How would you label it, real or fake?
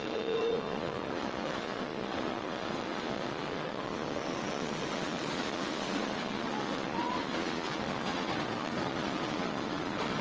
fake